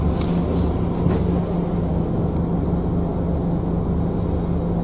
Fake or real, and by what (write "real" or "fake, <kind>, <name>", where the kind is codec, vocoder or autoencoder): real